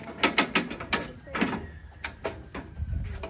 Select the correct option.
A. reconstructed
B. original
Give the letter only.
B